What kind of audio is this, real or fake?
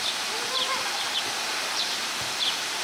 real